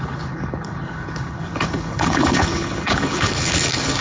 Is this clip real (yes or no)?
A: no